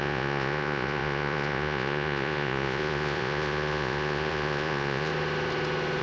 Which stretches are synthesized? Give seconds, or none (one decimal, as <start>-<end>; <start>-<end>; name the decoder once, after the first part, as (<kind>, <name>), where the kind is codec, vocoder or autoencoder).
0.0-5.1 (vocoder, Vocos)